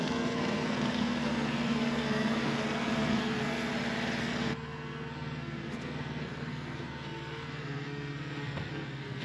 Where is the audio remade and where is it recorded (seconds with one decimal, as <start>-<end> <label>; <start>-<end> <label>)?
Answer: 0.0-3.7 remade; 3.7-4.2 recorded; 4.2-9.2 remade